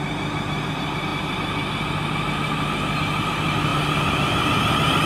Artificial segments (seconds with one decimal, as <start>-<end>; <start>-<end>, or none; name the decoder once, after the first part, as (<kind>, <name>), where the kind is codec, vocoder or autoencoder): none

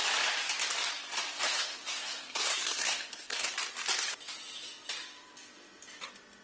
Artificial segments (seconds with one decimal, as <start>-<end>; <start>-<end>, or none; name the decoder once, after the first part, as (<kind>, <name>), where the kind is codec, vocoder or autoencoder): 1.5-3.5 (codec, SNAC)

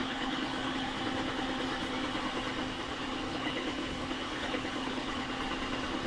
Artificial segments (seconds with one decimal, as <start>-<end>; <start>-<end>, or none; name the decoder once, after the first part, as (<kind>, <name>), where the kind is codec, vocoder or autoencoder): 0.0-1.0 (codec, HILCodec); 3.3-5.3

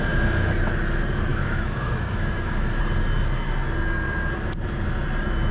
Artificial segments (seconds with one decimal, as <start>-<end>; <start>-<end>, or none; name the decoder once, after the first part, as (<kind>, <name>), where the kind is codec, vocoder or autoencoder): 1.3-2.8 (autoencoder, DAC-VAE)

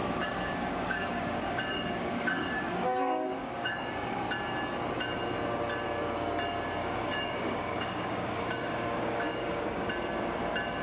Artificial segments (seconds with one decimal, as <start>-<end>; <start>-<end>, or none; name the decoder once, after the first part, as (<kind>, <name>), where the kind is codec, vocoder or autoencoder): 0.0-4.2 (codec, DAC); 6.8-9.9

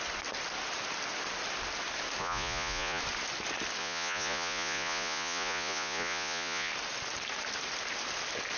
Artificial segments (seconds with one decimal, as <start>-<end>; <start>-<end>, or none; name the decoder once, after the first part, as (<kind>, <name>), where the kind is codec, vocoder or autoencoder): 2.2-3.0 (vocoder, Vocos); 3.8-6.7

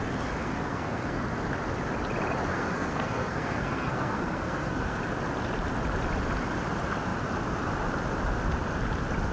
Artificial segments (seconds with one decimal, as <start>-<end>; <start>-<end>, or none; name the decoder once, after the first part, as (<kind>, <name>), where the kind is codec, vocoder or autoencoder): 0.4-1.2 (codec, SNAC); 2.5-5.0